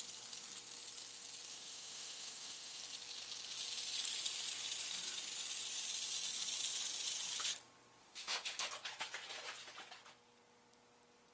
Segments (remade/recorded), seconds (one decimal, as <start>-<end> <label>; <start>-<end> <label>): 0.0-1.5 recorded; 1.5-2.8 remade; 2.8-8.0 recorded; 8.0-8.7 remade; 8.7-11.3 recorded